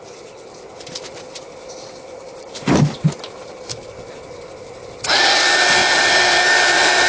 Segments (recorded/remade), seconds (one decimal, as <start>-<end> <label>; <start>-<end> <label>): 0.0-7.1 recorded